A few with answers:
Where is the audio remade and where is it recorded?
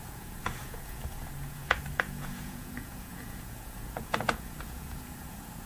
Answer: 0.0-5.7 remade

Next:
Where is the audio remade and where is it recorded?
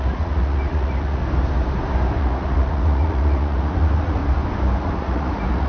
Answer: 0.0-1.2 remade; 1.2-2.2 recorded; 2.2-4.2 remade; 4.2-4.8 recorded; 4.8-5.7 remade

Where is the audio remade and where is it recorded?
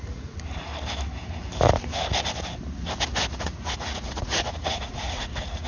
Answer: 0.0-0.7 remade; 0.7-3.3 recorded; 3.3-5.7 remade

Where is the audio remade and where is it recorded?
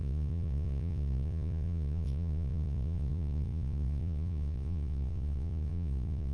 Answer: 0.0-6.3 remade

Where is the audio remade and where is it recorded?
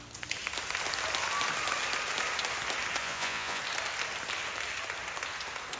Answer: 0.0-3.0 recorded; 3.0-3.6 remade; 3.6-5.8 recorded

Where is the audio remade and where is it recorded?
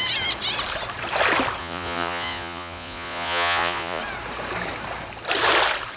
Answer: 0.0-1.6 recorded; 1.6-4.0 remade; 4.0-6.0 recorded